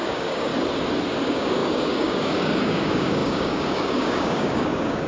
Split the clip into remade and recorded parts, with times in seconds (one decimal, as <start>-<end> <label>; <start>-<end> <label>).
0.0-0.5 remade; 0.5-1.2 recorded; 1.2-5.1 remade